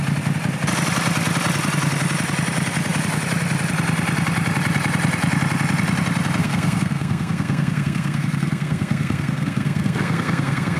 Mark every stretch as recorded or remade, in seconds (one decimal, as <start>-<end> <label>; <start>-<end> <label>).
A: 0.0-6.4 recorded; 6.4-10.8 remade